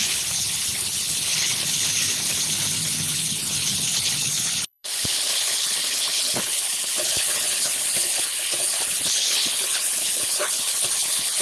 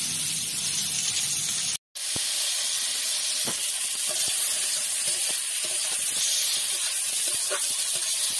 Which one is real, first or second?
second